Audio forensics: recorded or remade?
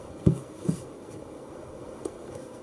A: remade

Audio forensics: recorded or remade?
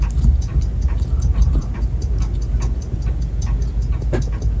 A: recorded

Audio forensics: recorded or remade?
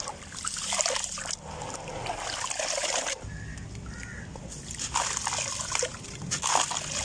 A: recorded